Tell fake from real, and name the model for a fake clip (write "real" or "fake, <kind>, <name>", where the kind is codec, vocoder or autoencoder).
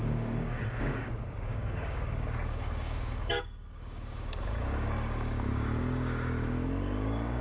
fake, codec, DAC